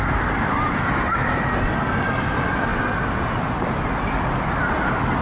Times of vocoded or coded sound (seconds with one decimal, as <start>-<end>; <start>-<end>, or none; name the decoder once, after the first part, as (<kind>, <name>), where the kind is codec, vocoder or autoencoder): none